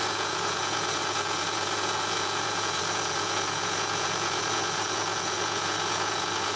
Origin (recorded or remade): remade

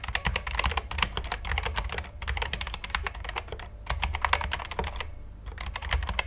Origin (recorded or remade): recorded